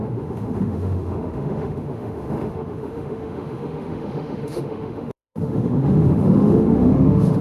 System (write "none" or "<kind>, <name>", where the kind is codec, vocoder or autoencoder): autoencoder, DAC-VAE